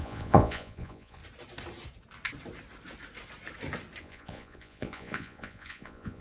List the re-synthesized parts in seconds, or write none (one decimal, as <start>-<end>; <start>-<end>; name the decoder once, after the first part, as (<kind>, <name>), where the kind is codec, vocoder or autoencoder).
0.0-1.2 (vocoder, Vocos); 4.0-6.2

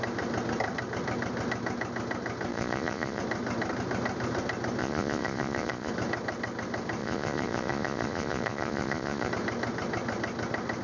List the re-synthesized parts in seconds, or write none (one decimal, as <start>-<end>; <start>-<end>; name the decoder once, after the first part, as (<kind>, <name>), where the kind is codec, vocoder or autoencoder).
2.5-3.2 (vocoder, Vocos); 4.8-5.9; 7.0-9.3

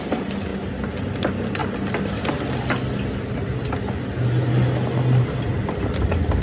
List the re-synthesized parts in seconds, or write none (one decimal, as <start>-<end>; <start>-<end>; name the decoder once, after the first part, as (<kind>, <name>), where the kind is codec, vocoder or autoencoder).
none

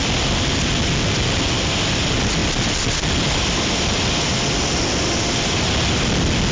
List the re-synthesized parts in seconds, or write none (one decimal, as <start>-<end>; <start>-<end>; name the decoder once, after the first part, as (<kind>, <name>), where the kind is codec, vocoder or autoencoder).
none

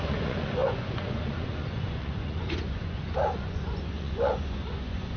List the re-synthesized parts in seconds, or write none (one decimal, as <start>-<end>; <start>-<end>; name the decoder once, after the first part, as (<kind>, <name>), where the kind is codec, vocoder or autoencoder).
0.0-5.2 (vocoder, Vocos)